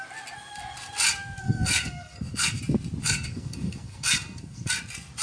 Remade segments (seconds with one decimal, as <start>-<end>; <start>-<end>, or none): 1.4-2.6; 3.0-4.7